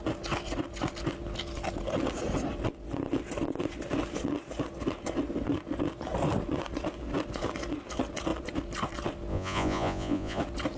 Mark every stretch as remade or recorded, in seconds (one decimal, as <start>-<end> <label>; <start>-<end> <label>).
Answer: 0.0-9.3 recorded; 9.3-10.4 remade; 10.4-10.8 recorded